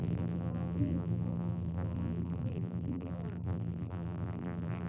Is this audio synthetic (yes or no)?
yes